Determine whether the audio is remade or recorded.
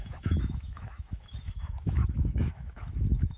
remade